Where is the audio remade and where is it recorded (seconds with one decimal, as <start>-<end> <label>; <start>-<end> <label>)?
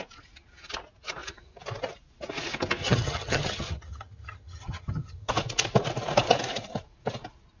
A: 0.0-2.8 recorded; 2.8-5.3 remade; 5.3-7.6 recorded